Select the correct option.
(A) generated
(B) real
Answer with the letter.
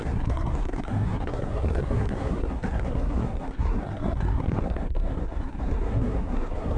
A